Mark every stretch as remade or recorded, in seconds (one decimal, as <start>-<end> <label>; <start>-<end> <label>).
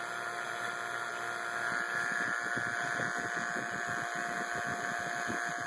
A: 0.0-5.7 recorded